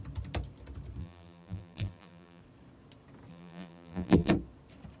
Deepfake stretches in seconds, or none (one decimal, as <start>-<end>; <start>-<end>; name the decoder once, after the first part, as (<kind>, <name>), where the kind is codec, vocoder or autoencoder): 1.0-2.4 (vocoder, BigVGAN v2); 3.3-4.3